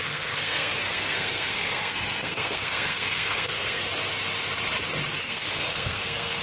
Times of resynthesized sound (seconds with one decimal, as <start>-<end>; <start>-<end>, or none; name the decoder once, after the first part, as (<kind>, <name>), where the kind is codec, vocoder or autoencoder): 0.0-3.8 (codec, SNAC); 5.2-6.4

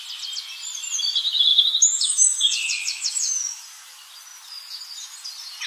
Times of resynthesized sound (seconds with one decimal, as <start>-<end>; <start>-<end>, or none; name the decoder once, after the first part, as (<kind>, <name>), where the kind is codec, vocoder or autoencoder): 1.5-3.6 (autoencoder, DAC-VAE)